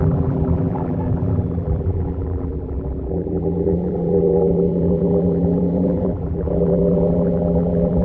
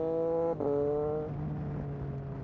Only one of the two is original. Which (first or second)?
second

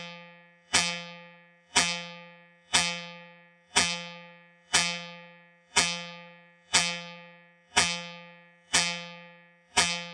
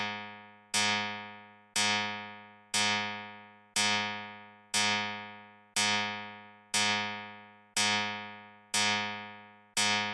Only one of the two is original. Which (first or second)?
second